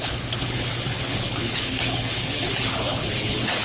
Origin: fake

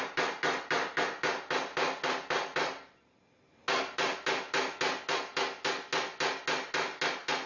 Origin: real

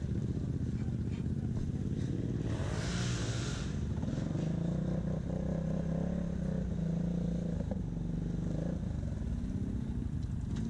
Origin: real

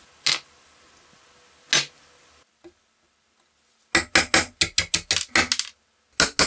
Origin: real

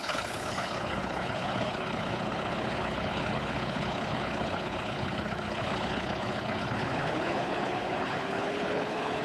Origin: fake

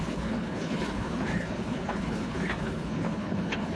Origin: fake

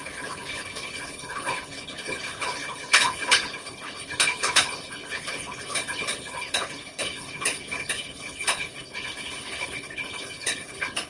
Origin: fake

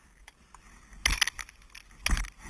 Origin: real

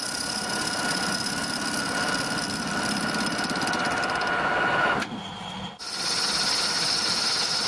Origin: real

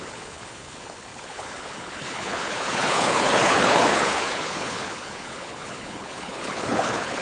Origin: fake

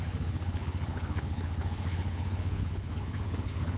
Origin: fake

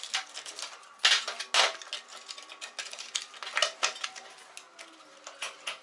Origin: real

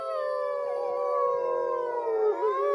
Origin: real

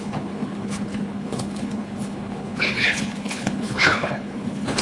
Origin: fake